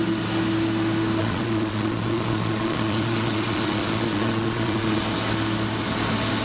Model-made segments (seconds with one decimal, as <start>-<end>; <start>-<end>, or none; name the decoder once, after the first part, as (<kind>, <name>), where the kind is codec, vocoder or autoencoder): 1.2-5.0 (vocoder, Vocos)